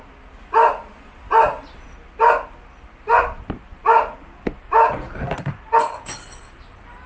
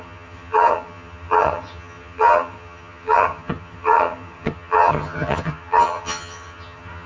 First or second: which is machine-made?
second